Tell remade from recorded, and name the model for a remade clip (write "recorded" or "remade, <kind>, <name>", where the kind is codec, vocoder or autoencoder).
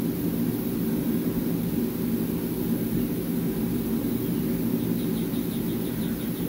recorded